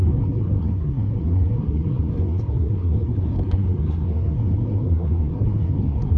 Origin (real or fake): fake